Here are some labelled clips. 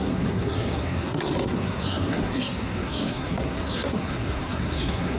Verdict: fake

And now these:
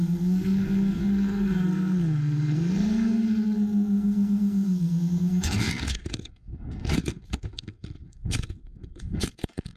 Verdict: fake